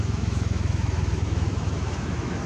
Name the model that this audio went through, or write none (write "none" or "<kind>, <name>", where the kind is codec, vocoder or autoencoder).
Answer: autoencoder, DAC-VAE